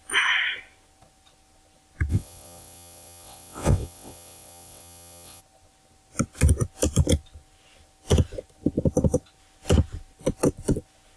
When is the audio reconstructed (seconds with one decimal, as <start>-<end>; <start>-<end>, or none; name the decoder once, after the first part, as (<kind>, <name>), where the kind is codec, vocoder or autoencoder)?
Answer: 2.1-5.4 (vocoder, WaveNeXt)